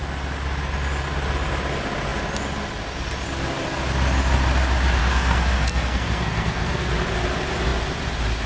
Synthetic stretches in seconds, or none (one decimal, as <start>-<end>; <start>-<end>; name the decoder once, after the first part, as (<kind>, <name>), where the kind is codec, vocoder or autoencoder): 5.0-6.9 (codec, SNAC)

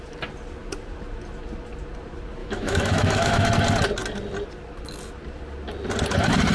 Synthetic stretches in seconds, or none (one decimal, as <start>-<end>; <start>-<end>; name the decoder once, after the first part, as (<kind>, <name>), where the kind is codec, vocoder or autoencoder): 2.4-3.5 (autoencoder, DAC-VAE)

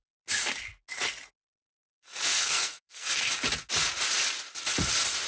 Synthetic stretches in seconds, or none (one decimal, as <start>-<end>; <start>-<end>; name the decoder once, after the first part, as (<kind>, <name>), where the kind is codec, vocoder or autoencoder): 1.5-3.3 (codec, SNAC)

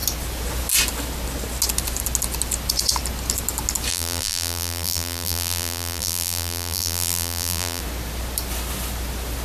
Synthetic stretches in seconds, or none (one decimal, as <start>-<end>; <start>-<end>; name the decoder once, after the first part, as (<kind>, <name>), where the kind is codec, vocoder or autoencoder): 3.9-7.8 (vocoder, BigVGAN v2)

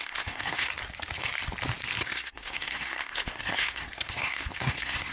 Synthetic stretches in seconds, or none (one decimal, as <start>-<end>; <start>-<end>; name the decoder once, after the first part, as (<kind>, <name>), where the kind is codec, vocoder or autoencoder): 0.0-0.7 (codec, SNAC); 2.0-5.1

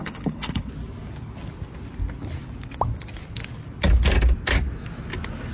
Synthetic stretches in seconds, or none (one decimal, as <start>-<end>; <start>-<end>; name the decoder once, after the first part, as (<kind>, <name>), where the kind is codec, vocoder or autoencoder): 0.0-0.7 (codec, HILCodec)

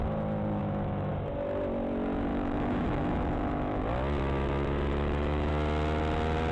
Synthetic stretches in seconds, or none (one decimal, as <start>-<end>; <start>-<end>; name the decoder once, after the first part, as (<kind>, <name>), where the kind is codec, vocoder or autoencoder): 0.6-1.1 (autoencoder, DAC-VAE); 2.3-3.8; 4.9-5.5

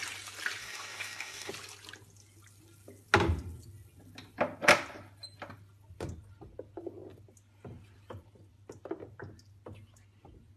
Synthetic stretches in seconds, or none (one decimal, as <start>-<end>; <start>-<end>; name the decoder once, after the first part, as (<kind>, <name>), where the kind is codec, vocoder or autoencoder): 0.6-1.5 (codec, DAC)